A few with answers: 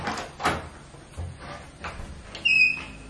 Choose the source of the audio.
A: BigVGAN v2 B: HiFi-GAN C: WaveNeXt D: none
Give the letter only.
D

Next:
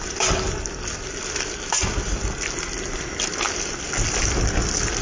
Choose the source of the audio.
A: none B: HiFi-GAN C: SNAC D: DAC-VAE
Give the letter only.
A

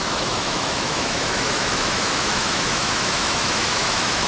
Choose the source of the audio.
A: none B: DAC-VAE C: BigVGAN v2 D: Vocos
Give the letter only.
B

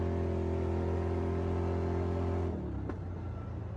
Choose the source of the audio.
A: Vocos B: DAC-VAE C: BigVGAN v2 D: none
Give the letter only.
D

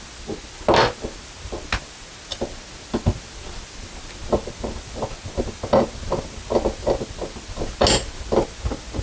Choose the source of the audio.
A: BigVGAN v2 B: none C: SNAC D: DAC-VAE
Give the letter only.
B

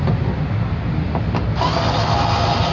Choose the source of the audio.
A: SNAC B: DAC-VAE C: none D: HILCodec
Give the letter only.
C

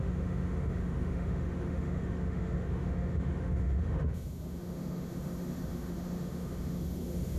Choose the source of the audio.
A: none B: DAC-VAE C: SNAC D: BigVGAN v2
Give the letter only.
B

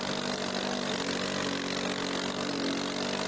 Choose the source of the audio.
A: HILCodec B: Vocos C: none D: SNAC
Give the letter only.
C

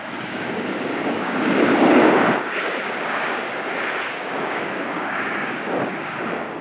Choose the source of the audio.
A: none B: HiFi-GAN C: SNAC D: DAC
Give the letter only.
D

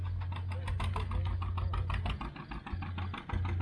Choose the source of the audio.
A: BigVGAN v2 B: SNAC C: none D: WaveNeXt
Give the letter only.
C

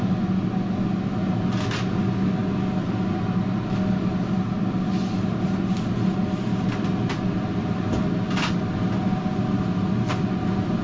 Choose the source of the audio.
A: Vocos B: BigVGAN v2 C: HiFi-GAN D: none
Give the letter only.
D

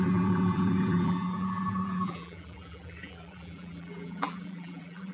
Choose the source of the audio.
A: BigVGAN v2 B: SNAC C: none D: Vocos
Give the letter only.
A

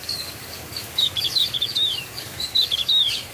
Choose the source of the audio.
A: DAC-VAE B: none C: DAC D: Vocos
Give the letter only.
C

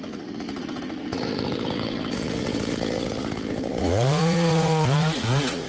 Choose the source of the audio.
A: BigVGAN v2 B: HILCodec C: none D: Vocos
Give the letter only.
D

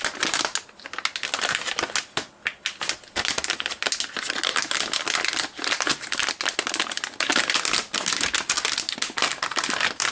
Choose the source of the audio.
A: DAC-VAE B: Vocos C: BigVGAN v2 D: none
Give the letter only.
D